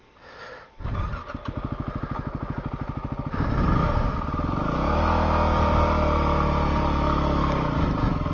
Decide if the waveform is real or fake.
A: real